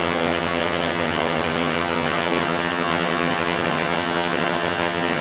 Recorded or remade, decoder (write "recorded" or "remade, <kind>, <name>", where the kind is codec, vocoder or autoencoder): remade, vocoder, HiFi-GAN